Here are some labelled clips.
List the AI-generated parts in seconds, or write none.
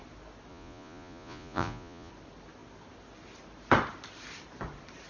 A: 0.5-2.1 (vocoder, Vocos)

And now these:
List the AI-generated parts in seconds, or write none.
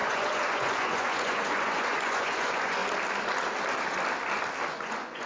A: 0.0-2.8 (vocoder, Vocos); 4.7-5.3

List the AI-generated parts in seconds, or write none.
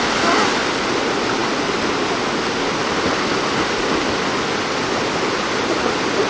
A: none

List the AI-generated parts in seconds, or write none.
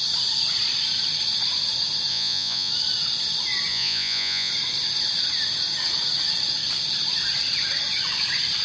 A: 2.1-2.7 (vocoder, Vocos); 3.7-4.5